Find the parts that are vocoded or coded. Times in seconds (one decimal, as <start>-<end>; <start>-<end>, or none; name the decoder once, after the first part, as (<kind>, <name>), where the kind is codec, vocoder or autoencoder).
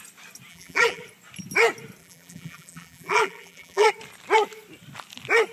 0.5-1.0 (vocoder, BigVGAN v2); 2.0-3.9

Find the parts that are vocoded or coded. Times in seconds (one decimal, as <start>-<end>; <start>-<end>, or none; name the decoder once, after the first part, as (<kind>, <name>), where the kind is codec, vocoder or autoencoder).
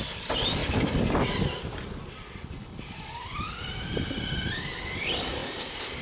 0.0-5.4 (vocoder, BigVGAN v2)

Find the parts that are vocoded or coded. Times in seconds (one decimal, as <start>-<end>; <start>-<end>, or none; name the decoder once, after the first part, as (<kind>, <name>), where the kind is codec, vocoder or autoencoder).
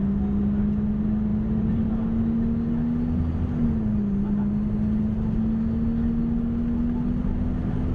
1.3-1.9 (vocoder, BigVGAN v2)